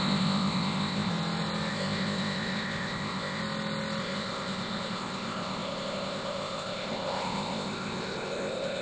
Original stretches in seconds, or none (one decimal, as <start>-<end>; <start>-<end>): 1.1-1.7; 3.4-4.0